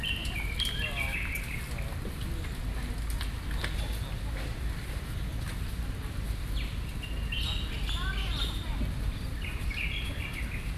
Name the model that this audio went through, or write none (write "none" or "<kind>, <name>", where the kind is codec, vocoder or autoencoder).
none